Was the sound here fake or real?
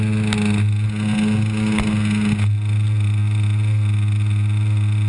real